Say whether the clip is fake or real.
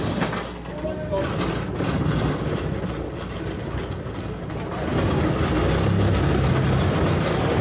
real